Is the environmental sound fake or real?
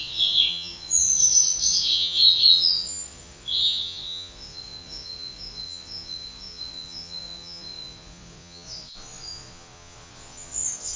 fake